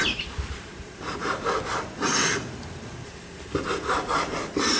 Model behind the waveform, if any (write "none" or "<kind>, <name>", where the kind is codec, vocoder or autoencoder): vocoder, BigVGAN v2